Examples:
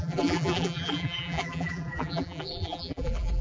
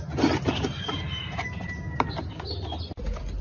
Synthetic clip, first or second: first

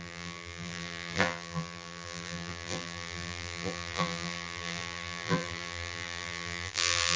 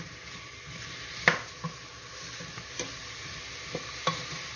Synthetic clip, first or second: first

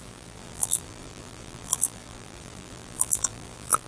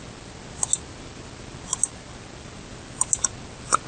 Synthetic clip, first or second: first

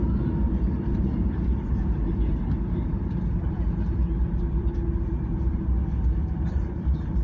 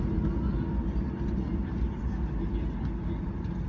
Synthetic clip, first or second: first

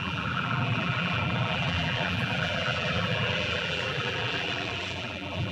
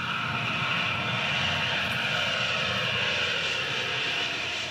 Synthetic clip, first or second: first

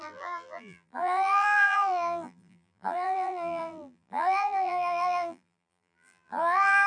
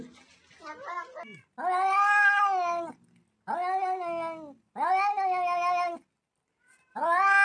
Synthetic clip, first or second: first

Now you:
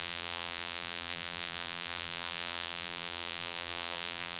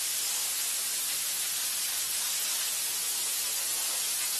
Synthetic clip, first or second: first